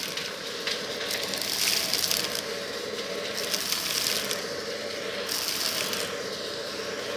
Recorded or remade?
recorded